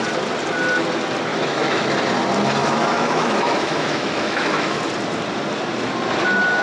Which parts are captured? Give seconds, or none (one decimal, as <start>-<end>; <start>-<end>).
0.0-1.3; 1.9-2.6; 4.8-6.6